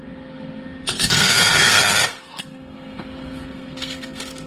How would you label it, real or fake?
fake